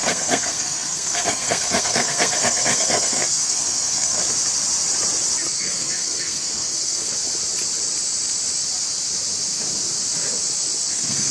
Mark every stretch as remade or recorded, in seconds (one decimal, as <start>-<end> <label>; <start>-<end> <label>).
0.0-4.2 remade; 4.2-5.6 recorded; 5.6-7.1 remade; 7.1-10.9 recorded; 10.9-11.3 remade

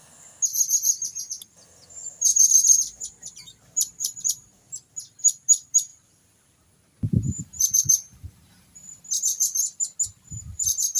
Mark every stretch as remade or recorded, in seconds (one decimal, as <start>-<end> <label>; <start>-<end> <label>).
0.0-0.5 recorded; 0.5-1.3 remade; 1.3-2.1 recorded; 2.1-4.9 remade; 4.9-5.9 recorded; 5.9-9.0 remade; 9.0-11.0 recorded